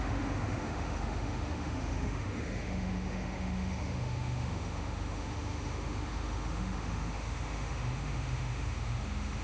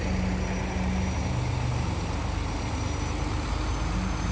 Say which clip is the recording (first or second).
second